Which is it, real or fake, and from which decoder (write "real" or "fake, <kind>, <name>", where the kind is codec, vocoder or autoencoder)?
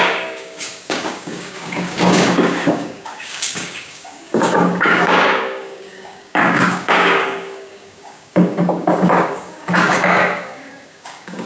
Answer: fake, codec, DAC